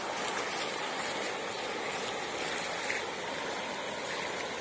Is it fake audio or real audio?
real